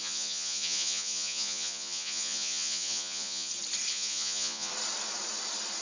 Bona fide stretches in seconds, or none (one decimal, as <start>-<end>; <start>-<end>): 3.5-3.9; 4.7-5.8